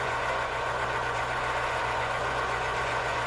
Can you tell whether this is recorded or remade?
remade